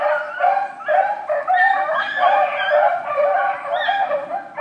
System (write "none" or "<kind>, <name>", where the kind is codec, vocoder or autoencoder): none